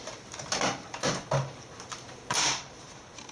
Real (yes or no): no